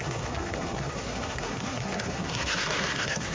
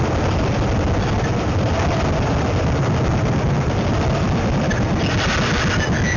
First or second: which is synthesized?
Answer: first